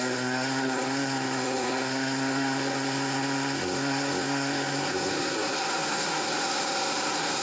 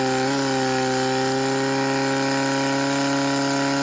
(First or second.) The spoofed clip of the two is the first